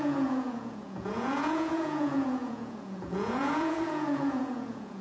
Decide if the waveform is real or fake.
fake